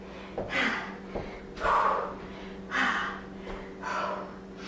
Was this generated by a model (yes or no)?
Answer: no